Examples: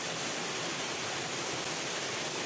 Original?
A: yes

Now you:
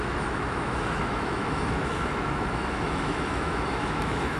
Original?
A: no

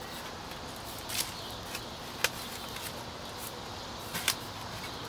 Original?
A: yes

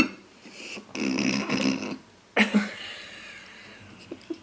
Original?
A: yes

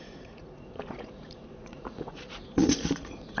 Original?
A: no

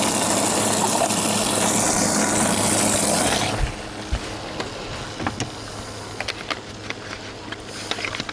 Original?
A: yes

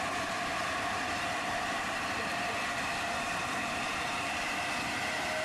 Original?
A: no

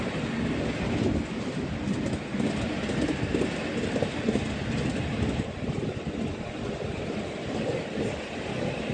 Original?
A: yes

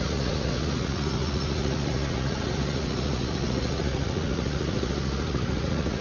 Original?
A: no